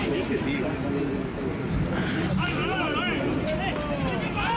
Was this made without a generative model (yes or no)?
yes